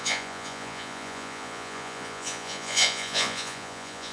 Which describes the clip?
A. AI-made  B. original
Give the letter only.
A